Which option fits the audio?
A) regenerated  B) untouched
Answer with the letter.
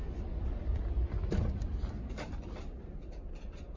B